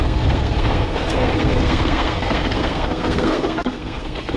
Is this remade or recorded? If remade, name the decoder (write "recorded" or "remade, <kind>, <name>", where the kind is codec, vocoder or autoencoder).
remade, codec, SNAC